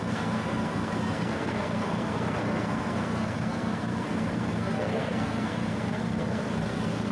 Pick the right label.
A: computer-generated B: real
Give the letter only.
A